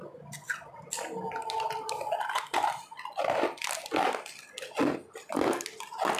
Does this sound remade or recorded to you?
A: recorded